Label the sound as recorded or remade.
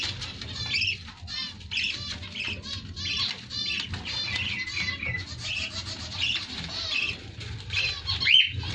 recorded